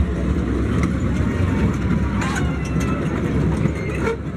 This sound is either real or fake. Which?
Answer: real